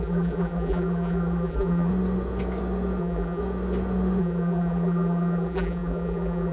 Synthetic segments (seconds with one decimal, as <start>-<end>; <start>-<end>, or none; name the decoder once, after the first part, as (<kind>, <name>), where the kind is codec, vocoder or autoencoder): 0.0-1.9 (vocoder, BigVGAN v2); 3.0-3.4; 4.2-6.5